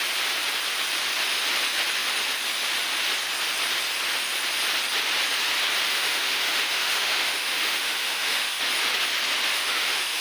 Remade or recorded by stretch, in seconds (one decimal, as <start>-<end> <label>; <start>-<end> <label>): 0.0-5.9 recorded; 5.9-8.6 remade; 8.6-9.5 recorded; 9.5-10.2 remade